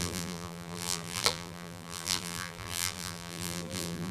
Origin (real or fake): fake